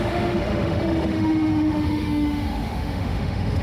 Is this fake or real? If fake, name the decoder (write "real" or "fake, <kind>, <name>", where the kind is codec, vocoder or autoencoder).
fake, autoencoder, DAC-VAE